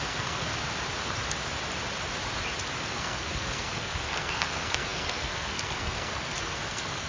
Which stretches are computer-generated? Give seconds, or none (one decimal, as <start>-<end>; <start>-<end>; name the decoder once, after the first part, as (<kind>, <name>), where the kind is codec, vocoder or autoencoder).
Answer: 0.0-0.6 (codec, SNAC); 2.8-7.1